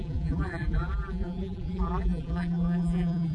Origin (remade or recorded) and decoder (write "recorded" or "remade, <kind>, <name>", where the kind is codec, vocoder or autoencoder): remade, vocoder, BigVGAN v2